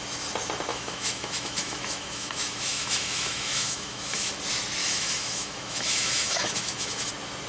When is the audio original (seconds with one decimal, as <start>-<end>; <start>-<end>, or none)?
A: 0.0-0.7; 4.3-4.8; 7.1-7.5